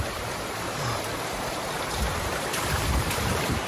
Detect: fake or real fake